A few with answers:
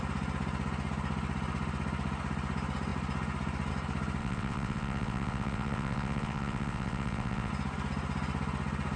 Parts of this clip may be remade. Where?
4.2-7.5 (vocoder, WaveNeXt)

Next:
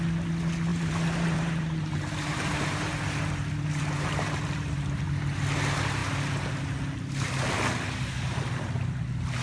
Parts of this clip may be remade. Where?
0.7-5.0 (vocoder, BigVGAN v2)

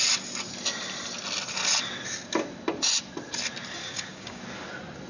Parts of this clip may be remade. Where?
3.8-4.4 (codec, DAC)

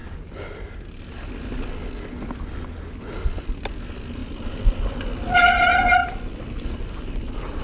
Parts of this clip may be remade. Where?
4.2-5.6 (vocoder, BigVGAN v2)

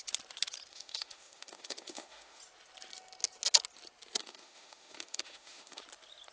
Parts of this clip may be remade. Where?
0.7-2.4 (autoencoder, DAC-VAE); 4.2-5.8

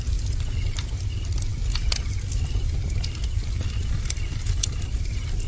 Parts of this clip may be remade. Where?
none

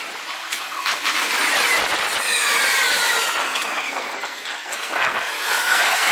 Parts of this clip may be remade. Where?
0.4-1.3 (codec, SNAC); 3.4-6.1